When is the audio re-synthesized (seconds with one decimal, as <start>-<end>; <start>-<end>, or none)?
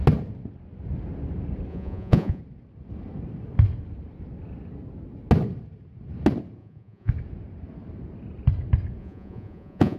1.7-2.4; 6.6-7.1; 9.0-10.0